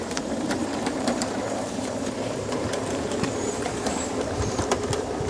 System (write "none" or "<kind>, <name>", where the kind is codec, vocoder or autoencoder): vocoder, BigVGAN v2